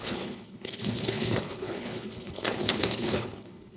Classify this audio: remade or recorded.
remade